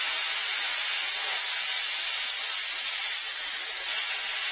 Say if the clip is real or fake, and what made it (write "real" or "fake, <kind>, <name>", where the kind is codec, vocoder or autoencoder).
real